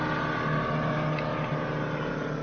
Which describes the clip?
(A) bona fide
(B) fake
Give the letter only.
A